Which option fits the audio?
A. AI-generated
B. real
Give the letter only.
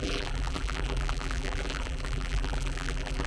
A